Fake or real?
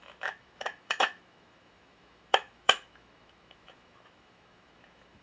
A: fake